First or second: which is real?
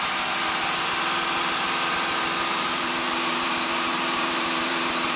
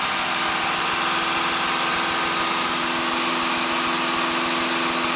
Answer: second